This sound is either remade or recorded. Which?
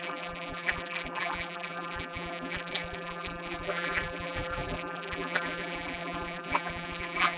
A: remade